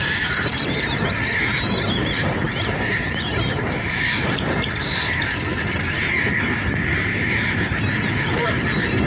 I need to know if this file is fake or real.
fake